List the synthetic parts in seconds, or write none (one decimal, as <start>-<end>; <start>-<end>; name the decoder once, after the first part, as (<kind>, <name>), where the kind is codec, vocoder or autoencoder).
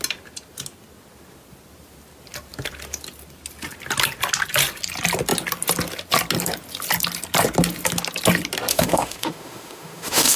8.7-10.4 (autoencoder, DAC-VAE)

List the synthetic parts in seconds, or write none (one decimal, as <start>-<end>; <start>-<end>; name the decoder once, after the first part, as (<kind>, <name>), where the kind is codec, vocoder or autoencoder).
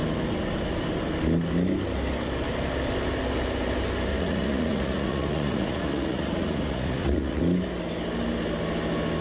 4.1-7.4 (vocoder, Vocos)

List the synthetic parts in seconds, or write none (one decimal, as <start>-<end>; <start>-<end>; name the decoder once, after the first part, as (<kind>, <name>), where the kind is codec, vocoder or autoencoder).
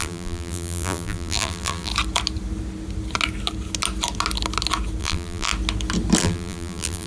0.0-1.9 (vocoder, BigVGAN v2); 5.0-5.5; 6.2-7.1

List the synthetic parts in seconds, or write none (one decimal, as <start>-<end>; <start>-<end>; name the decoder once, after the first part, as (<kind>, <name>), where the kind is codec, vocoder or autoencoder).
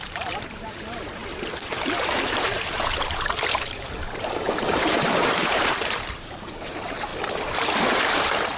0.0-7.1 (vocoder, BigVGAN v2); 7.8-8.6